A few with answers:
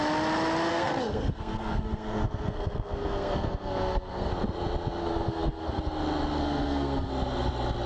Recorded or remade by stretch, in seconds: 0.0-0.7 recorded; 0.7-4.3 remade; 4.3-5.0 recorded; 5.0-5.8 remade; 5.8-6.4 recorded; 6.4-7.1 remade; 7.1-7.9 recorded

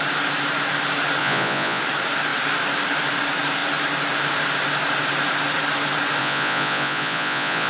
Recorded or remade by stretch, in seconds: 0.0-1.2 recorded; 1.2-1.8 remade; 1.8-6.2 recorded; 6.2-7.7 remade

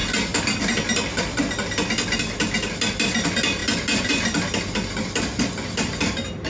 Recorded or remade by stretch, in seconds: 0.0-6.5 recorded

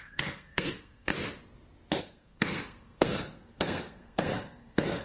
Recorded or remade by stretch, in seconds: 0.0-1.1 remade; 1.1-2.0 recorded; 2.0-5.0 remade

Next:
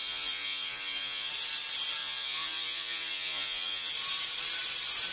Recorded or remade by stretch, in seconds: 0.0-1.3 remade; 1.3-2.0 recorded; 2.0-3.9 remade; 3.9-5.1 recorded